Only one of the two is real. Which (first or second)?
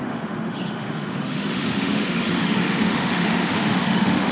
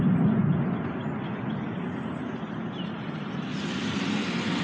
second